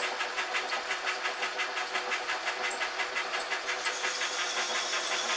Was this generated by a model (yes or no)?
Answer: no